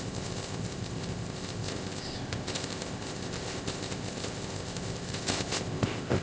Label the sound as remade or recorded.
remade